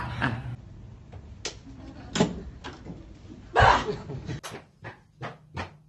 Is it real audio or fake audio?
real